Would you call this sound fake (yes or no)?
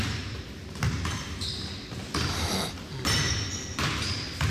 no